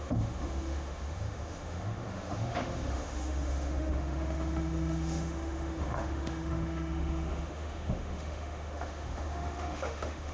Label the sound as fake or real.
fake